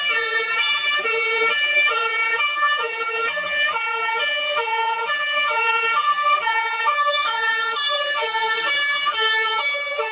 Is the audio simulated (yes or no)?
yes